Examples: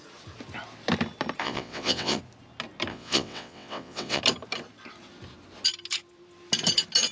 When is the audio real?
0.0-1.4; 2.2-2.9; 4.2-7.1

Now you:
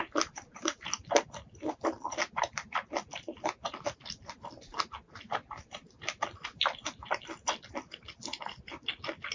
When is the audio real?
0.9-9.3

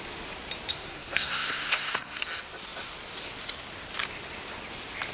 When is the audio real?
0.0-0.7; 2.2-5.1

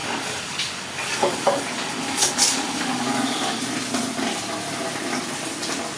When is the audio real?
3.6-6.0

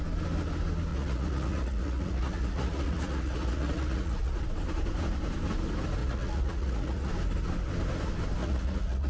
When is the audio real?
0.0-0.9; 4.3-6.0; 7.1-8.4

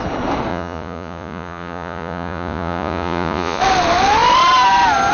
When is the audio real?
0.0-0.5; 3.6-5.1

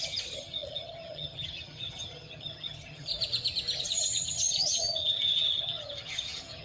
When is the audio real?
3.1-3.8

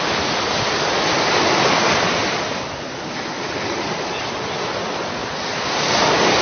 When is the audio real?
0.0-6.4